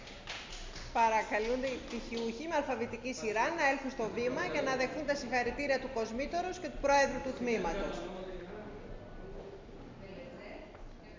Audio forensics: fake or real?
real